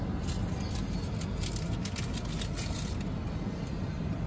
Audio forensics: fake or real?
real